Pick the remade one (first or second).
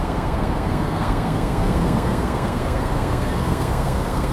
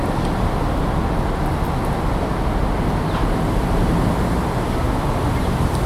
first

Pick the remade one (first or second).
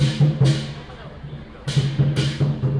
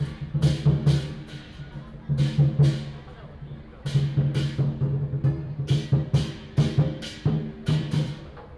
first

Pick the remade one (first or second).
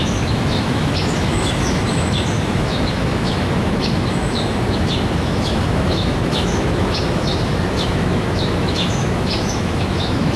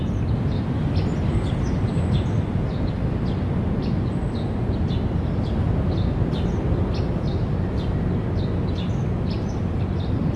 first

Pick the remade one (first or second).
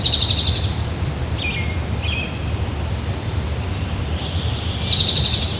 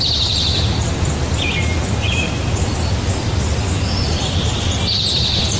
second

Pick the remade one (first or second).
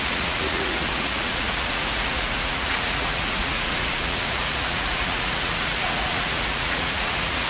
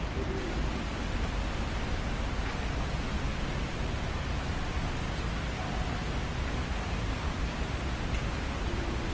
first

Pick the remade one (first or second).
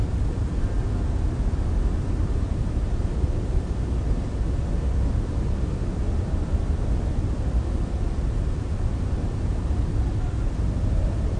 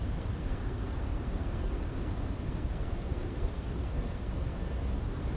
second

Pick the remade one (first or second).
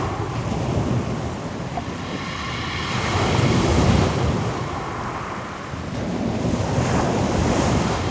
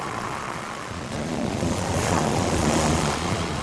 second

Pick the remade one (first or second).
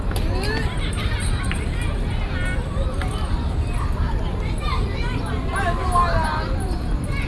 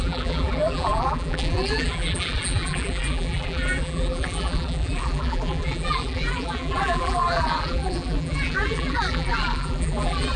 second